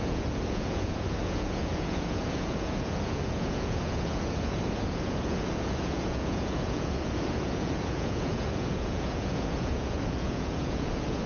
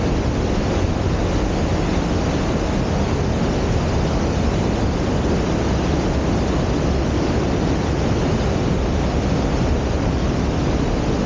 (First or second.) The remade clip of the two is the first